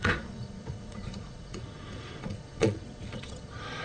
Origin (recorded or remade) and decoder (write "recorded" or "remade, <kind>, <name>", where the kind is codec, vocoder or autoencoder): remade, vocoder, Vocos